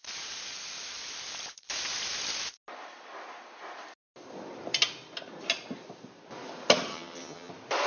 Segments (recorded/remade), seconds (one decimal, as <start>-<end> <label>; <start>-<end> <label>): 0.0-6.9 recorded; 6.9-7.5 remade; 7.5-7.9 recorded